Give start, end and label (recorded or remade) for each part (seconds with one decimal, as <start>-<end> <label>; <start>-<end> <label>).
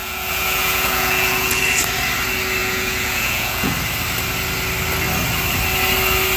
0.0-1.6 remade; 1.6-2.6 recorded; 2.6-3.7 remade; 3.7-6.4 recorded